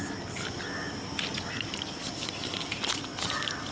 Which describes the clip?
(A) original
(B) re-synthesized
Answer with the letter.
A